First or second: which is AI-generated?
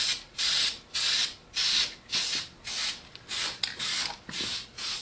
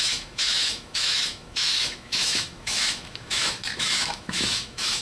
second